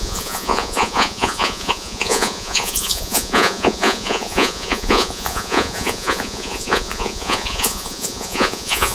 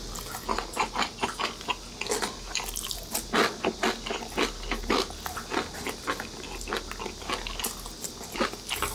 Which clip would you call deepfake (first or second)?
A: first